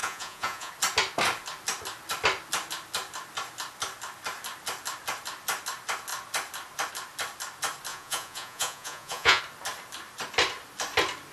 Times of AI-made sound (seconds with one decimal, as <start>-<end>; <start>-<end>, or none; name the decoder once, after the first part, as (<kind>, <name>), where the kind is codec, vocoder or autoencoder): 0.0-0.7 (vocoder, Vocos); 7.9-9.4